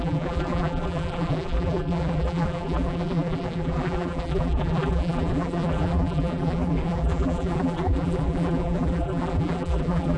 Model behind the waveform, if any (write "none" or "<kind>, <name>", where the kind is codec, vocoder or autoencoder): vocoder, BigVGAN v2